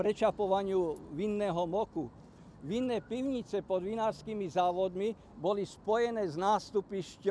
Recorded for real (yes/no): yes